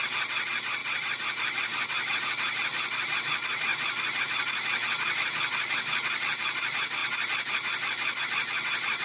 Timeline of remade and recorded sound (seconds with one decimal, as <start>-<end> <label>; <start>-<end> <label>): 0.0-2.7 remade; 2.7-3.2 recorded; 3.2-3.7 remade; 3.7-4.2 recorded; 4.2-7.0 remade; 7.0-8.2 recorded; 8.2-9.0 remade